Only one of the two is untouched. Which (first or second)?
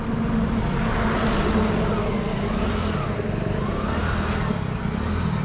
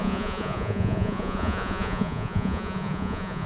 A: first